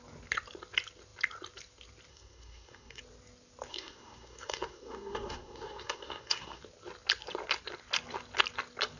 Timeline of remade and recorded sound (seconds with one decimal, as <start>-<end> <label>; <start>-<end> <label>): 0.0-2.1 recorded; 2.1-3.0 remade; 3.0-3.7 recorded; 3.7-6.6 remade; 6.6-9.0 recorded